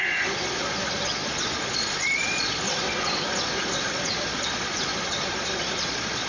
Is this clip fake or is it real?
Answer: fake